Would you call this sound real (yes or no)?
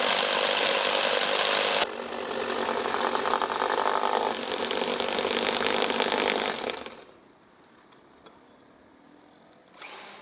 yes